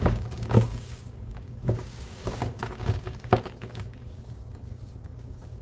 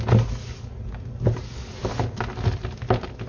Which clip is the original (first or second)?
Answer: second